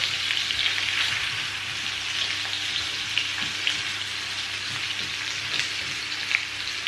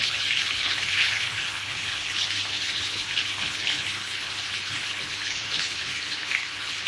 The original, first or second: first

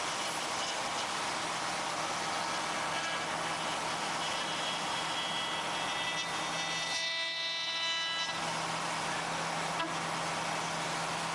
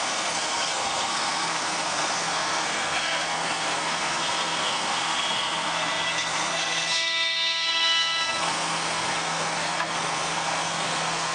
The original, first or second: first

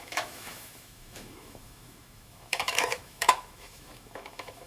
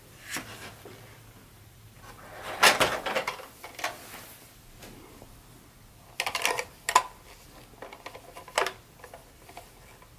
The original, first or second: second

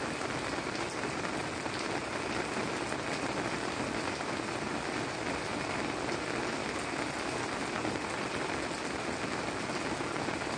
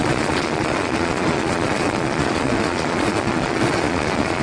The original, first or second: first